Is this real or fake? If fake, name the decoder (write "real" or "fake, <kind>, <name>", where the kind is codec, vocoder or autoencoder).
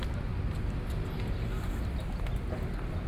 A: real